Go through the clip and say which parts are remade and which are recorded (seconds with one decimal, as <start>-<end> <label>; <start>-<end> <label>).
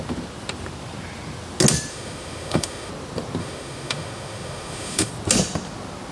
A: 0.0-1.9 recorded; 1.9-2.9 remade; 2.9-3.4 recorded; 3.4-5.1 remade; 5.1-6.1 recorded